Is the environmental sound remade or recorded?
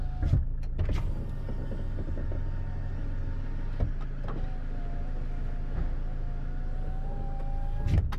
recorded